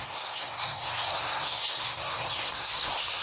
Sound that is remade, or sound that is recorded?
remade